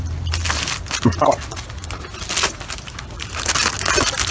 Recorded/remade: recorded